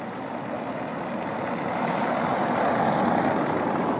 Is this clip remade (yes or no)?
no